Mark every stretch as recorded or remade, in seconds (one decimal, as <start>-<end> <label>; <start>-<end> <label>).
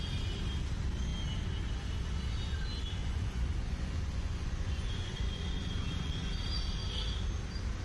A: 0.0-3.0 recorded; 3.0-6.3 remade; 6.3-7.8 recorded